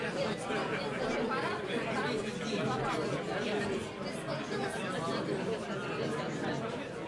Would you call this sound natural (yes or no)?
yes